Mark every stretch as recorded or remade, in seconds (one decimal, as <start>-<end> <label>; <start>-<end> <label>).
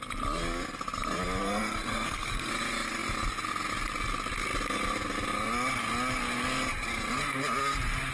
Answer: 0.0-1.4 recorded; 1.4-2.5 remade; 2.5-8.1 recorded